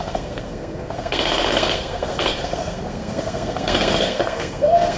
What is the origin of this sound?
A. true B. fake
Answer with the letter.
B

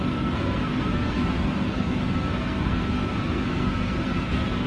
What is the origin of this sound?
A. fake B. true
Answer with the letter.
A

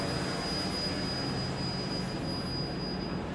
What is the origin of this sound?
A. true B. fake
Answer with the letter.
A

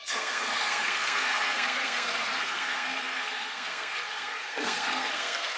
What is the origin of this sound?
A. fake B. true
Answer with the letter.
A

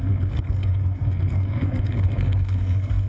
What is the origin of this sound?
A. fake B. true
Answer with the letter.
A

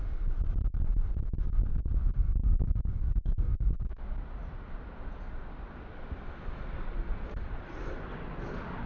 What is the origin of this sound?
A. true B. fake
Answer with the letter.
A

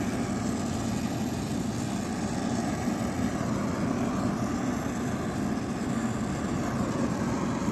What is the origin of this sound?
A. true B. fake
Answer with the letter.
A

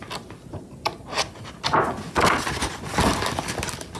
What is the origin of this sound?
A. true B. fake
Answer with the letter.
A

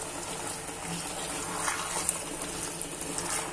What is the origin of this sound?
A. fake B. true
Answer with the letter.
B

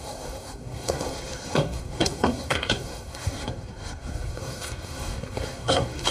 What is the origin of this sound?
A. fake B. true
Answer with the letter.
A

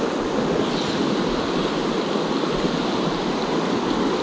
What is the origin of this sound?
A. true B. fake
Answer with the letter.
A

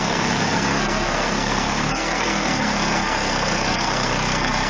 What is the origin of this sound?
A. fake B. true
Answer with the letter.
A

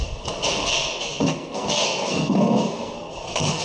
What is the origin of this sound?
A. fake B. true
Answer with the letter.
A